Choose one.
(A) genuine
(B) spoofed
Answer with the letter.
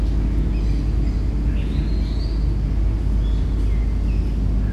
A